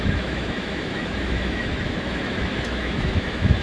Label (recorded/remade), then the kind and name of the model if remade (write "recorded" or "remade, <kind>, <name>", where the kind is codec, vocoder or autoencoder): remade, autoencoder, DAC-VAE